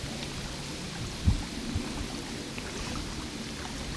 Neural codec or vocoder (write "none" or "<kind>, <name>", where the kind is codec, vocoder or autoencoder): none